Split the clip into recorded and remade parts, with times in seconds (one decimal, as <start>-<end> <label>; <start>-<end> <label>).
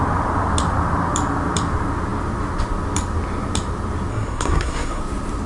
0.0-4.1 recorded; 4.1-5.0 remade; 5.0-5.5 recorded